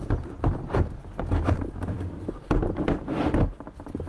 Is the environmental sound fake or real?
real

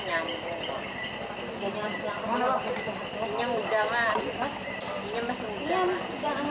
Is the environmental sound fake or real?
real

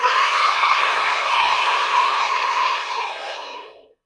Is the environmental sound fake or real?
fake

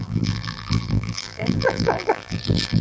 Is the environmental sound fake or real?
fake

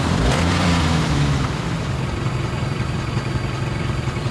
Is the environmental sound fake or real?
fake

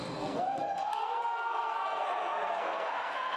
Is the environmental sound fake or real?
fake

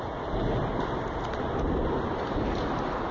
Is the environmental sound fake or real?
real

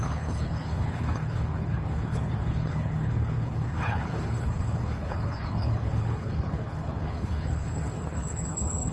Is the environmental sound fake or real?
fake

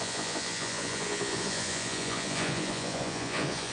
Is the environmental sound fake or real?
fake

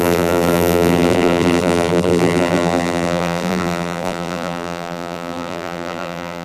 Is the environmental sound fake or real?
fake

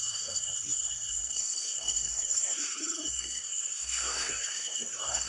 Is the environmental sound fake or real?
fake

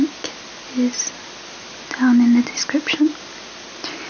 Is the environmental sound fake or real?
real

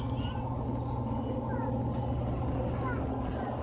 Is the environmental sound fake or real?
real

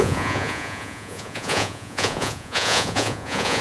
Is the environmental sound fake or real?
fake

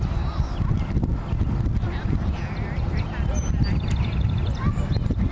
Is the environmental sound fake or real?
fake